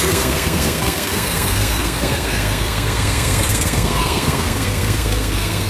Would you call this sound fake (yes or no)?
yes